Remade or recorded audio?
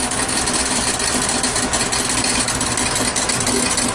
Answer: recorded